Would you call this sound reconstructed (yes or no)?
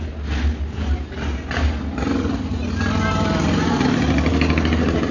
no